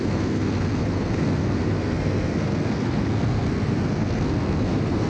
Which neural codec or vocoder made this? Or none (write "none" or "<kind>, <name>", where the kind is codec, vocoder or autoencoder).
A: codec, SNAC